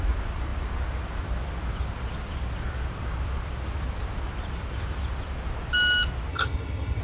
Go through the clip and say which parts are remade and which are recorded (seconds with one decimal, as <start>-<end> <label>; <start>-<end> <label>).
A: 0.0-6.3 recorded; 6.3-7.0 remade